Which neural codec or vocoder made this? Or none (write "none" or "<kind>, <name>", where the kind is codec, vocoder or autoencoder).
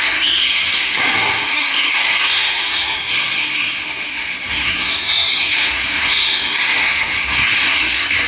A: codec, SNAC